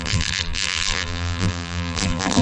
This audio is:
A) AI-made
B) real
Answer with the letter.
A